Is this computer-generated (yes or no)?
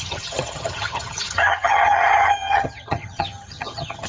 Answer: yes